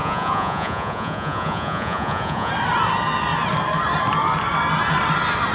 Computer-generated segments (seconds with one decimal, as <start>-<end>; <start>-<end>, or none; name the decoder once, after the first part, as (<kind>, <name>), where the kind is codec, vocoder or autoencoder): 0.0-2.5 (vocoder, Vocos)